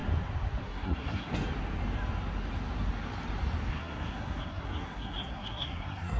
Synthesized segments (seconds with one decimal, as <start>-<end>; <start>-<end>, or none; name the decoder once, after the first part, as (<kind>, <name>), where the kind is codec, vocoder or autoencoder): 0.6-1.3 (codec, SNAC); 3.7-6.2